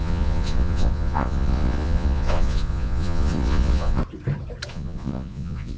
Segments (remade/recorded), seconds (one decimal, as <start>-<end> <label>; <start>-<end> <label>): 0.0-4.0 remade; 4.0-4.7 recorded; 4.7-5.8 remade